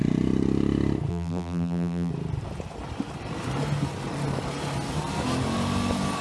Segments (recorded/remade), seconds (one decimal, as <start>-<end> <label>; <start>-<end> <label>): 0.0-1.1 recorded; 1.1-2.1 remade; 2.1-6.2 recorded